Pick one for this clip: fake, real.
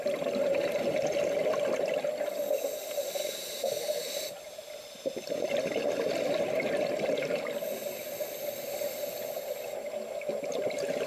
real